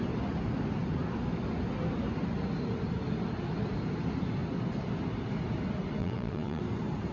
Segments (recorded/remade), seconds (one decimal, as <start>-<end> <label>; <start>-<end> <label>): 0.0-6.0 recorded; 6.0-6.6 remade; 6.6-7.1 recorded